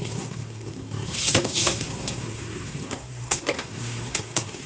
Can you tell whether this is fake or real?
fake